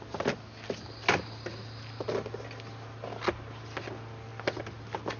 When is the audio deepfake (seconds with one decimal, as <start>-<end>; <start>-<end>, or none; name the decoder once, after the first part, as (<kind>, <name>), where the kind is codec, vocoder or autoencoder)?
none